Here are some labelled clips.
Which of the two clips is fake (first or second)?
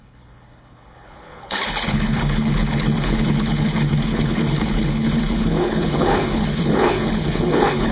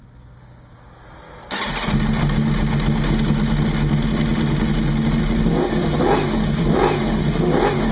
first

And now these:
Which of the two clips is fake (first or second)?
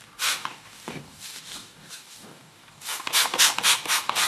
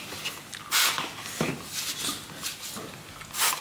first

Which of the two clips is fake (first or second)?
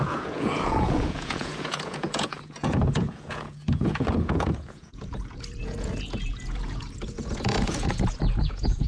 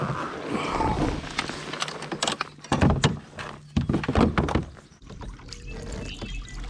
first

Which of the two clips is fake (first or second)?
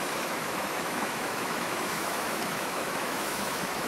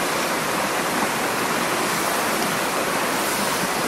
first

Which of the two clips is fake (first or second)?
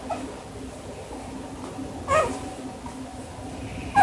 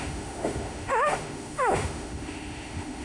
second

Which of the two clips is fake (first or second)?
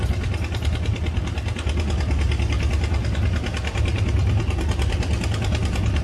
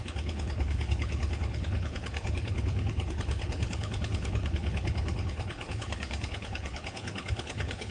second